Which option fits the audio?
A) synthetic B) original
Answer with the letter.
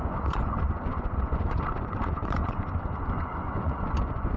A